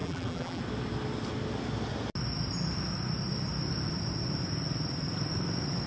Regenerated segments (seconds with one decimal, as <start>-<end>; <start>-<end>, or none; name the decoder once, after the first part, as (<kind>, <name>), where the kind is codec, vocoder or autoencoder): 0.0-0.6 (vocoder, BigVGAN v2)